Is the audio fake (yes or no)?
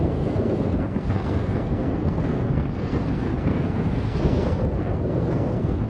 yes